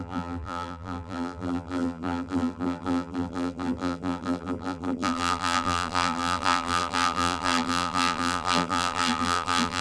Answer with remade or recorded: remade